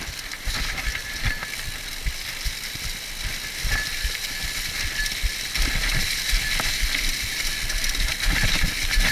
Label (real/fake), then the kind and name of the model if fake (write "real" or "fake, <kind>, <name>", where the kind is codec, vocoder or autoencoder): real